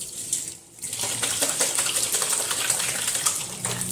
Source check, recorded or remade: remade